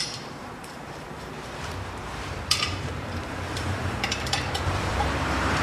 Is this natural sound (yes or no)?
no